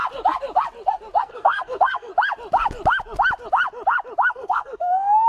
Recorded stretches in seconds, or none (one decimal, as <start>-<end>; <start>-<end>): 0.0-1.2; 2.1-4.3